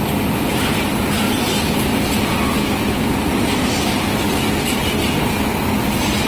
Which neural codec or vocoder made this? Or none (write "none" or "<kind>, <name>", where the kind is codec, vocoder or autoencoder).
none